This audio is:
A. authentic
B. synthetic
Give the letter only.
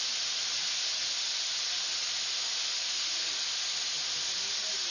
A